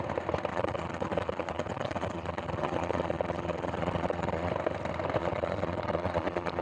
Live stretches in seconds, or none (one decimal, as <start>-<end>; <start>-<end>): 0.0-0.5; 4.5-5.2